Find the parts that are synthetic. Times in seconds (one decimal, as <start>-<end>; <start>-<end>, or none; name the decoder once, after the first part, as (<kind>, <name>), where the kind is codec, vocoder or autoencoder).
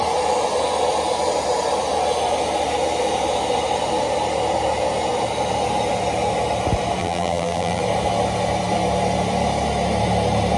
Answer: 7.0-7.8 (vocoder, BigVGAN v2)